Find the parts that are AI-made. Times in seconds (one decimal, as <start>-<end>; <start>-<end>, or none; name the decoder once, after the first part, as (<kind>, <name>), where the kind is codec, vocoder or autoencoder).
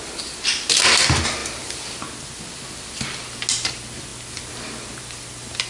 none